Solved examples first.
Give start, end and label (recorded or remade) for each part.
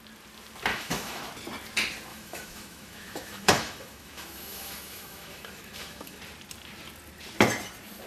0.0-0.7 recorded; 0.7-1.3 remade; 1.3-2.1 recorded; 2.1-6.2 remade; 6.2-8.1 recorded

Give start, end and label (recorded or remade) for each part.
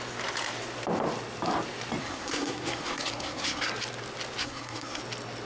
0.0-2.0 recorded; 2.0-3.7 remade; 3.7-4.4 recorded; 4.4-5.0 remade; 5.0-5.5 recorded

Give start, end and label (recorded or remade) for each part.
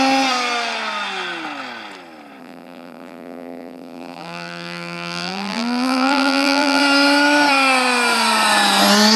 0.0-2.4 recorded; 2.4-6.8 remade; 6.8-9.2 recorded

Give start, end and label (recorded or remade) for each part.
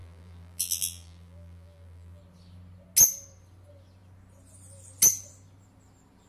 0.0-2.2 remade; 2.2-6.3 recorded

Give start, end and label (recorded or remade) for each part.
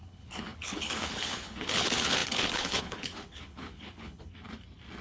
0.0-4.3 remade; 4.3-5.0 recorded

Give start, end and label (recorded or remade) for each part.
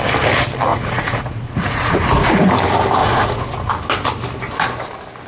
0.0-0.7 recorded; 0.7-2.4 remade; 2.4-3.0 recorded; 3.0-3.7 remade; 3.7-5.3 recorded